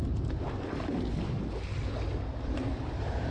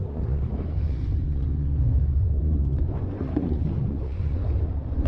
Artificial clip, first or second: second